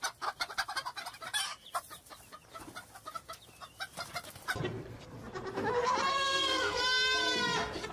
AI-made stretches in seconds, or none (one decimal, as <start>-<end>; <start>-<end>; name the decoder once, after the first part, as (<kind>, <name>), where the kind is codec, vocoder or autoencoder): 6.1-6.8 (codec, SNAC)